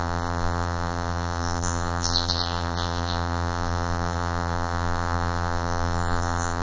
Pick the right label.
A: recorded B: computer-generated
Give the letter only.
B